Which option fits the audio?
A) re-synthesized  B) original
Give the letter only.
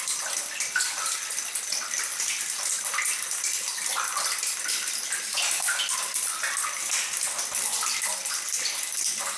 B